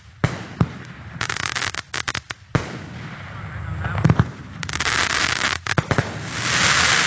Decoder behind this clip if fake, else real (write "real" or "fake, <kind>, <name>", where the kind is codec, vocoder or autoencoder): real